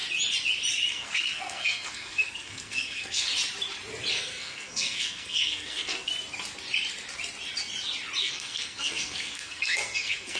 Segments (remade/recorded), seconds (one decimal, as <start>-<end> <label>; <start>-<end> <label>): 0.0-0.9 recorded; 0.9-3.3 remade; 3.3-4.1 recorded; 4.1-6.1 remade; 6.1-8.2 recorded; 8.2-10.4 remade